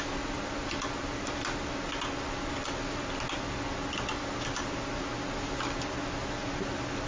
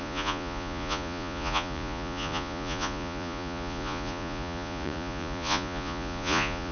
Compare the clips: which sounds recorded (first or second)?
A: first